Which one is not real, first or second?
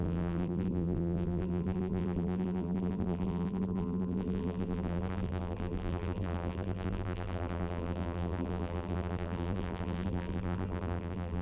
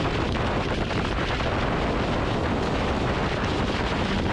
first